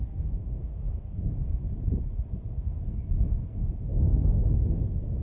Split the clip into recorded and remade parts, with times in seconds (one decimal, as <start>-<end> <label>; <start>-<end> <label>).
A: 0.0-1.6 remade; 1.6-2.3 recorded; 2.3-5.2 remade